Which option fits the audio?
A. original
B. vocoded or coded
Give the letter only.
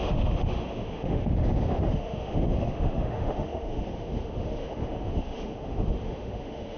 B